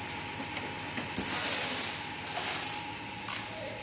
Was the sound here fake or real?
real